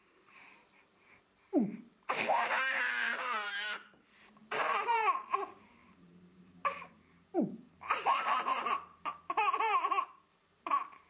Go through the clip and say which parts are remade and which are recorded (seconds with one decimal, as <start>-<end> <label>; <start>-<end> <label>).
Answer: 0.0-11.1 remade